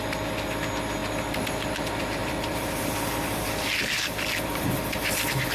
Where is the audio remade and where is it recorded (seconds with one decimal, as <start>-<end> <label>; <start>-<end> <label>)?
0.0-2.2 recorded; 2.2-5.5 remade